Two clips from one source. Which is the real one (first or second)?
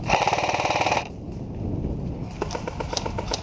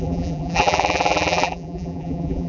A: first